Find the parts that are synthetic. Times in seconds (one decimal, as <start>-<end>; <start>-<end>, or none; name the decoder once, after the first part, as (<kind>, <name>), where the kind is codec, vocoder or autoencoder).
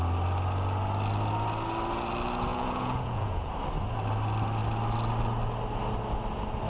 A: 2.5-3.5 (vocoder, Vocos)